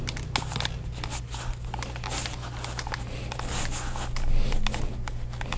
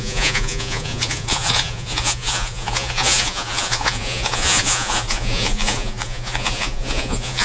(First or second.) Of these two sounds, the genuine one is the first